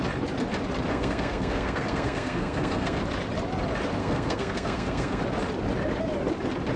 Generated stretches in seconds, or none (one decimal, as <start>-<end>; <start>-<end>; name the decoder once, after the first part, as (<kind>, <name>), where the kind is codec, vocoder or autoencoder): 0.9-3.0 (codec, SNAC); 4.0-5.2